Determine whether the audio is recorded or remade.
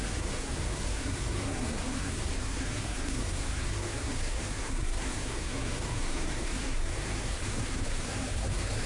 remade